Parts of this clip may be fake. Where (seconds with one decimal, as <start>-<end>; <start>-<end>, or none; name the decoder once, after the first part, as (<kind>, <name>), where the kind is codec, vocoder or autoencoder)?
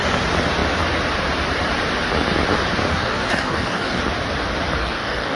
2.9-4.0 (codec, DAC); 4.8-5.4